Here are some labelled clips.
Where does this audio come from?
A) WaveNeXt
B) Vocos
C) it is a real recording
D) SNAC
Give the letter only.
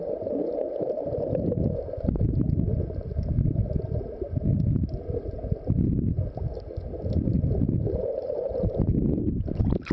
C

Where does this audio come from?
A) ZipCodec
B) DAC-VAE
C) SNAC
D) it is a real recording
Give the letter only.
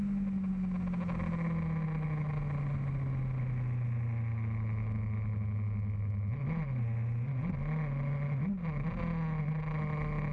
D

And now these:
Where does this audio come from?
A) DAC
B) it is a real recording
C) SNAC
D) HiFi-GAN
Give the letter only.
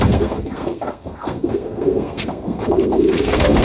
C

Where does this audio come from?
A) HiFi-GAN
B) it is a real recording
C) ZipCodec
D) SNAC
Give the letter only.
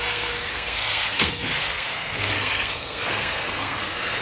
D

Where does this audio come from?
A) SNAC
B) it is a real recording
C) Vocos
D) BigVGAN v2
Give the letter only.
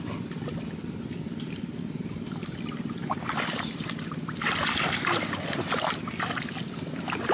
B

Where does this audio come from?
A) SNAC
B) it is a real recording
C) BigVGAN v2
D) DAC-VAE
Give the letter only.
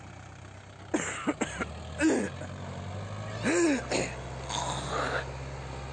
B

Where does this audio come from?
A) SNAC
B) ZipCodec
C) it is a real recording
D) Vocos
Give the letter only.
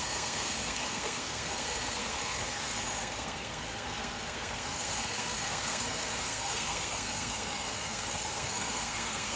A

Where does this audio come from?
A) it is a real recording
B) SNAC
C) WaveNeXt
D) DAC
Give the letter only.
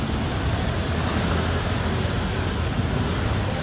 A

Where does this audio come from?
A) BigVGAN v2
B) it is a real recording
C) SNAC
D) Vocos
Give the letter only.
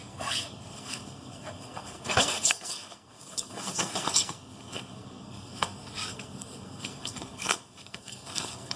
C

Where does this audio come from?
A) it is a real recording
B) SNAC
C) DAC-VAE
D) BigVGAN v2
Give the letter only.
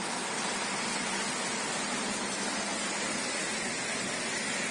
A